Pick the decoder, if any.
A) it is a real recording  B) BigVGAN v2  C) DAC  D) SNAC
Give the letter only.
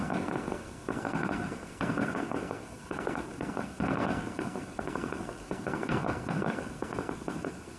D